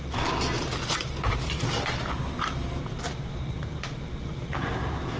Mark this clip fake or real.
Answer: real